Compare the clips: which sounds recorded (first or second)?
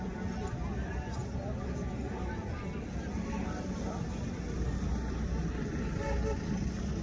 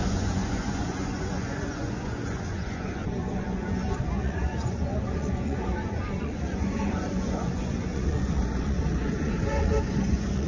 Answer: first